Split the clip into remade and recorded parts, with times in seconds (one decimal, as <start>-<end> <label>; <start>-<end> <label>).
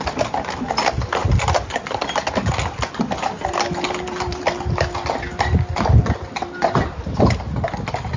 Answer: 0.0-8.2 recorded